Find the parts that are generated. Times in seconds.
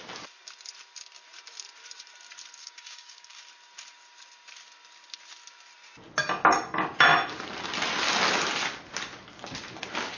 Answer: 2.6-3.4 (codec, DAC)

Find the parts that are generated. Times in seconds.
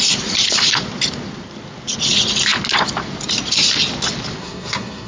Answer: 4.4-5.1 (codec, SNAC)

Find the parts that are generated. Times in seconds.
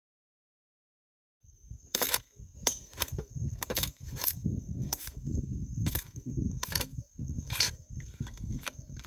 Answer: 0.0-9.1 (codec, SNAC)